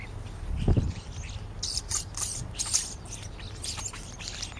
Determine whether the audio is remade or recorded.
recorded